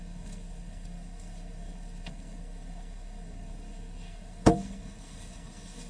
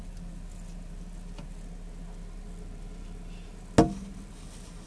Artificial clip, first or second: first